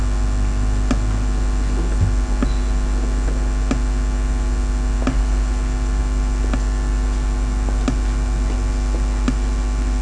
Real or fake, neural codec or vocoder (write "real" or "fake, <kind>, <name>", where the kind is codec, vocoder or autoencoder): real